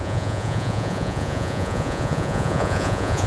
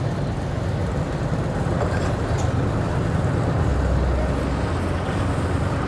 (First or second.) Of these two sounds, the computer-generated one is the first